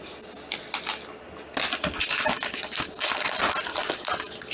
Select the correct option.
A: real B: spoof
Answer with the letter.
A